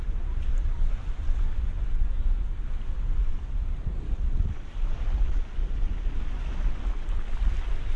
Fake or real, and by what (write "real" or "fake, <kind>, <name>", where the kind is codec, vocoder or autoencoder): real